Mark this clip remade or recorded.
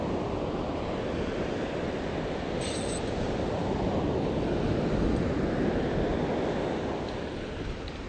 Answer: recorded